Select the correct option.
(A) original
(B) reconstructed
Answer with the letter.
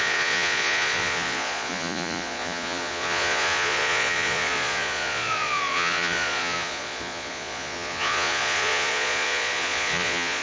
B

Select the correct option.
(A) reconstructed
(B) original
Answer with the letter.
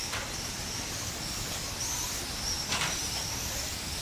B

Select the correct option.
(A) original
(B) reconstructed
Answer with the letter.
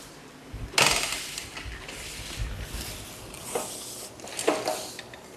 A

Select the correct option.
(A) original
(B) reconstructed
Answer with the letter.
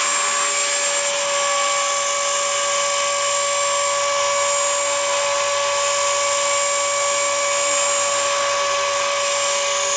A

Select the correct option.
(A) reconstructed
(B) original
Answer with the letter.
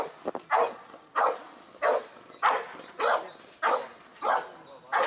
B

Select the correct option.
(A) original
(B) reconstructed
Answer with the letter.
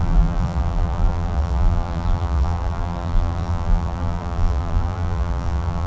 B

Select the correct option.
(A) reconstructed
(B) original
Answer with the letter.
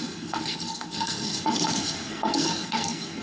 A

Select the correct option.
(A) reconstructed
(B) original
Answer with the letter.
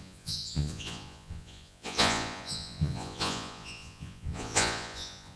A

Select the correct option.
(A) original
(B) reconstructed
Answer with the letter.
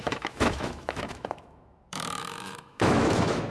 B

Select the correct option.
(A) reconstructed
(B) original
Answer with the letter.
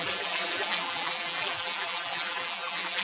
A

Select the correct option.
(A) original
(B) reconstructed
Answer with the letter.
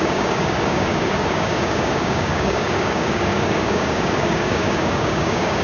B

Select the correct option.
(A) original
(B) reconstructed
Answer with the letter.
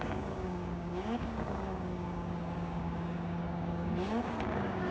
B